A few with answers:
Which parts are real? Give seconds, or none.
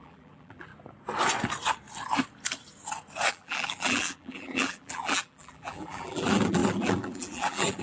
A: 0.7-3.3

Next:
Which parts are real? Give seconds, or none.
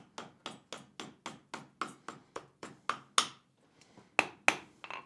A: 0.0-2.2; 2.8-5.1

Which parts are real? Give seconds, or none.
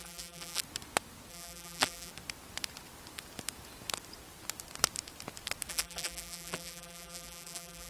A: 0.6-1.3; 2.1-5.7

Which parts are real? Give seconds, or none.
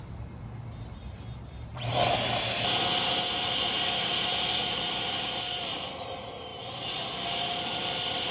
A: 0.0-8.3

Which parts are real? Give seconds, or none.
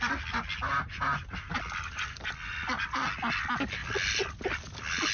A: 0.0-1.2; 2.5-3.8